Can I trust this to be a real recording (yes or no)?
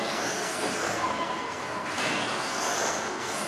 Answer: no